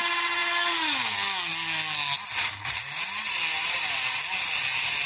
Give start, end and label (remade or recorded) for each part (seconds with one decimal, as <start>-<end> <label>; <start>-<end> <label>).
0.0-5.1 recorded